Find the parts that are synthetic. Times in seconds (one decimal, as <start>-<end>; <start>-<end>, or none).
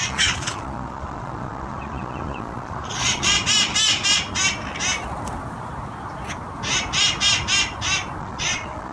0.0-3.4; 8.2-8.9